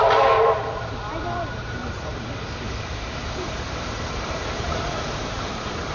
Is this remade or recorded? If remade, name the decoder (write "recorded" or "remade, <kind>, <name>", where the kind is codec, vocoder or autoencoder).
remade, vocoder, BigVGAN v2